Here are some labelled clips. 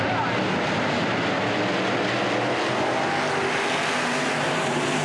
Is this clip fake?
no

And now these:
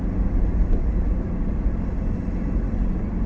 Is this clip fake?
no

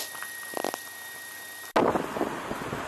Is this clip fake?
no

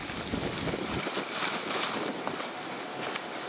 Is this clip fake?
no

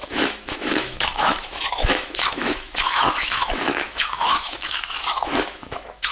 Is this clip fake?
yes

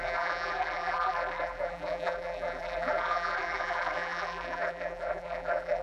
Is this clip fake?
yes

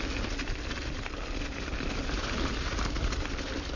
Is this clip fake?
no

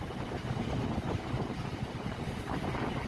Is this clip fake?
no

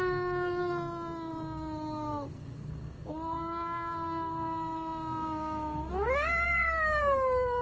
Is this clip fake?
yes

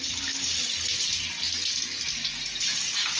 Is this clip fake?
no